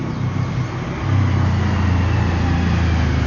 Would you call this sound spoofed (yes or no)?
no